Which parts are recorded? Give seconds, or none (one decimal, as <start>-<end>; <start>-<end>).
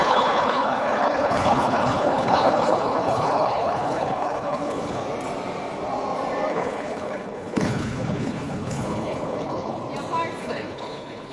5.0-6.5; 9.8-10.4